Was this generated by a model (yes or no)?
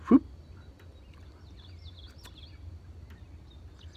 no